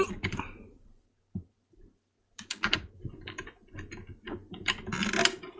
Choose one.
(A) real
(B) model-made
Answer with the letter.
B